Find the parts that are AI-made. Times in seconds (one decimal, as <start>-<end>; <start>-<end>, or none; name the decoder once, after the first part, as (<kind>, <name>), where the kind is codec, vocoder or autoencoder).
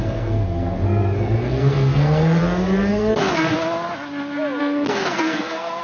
0.0-2.4 (codec, SNAC); 2.9-3.5; 4.6-5.8